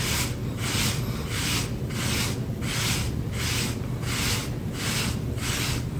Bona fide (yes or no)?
yes